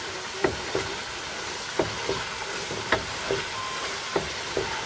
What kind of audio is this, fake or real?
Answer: real